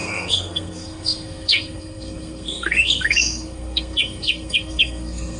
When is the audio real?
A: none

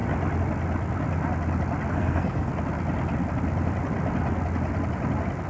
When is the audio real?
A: 0.0-1.9; 2.5-5.5